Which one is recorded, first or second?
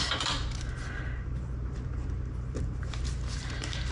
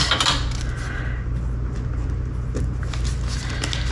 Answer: second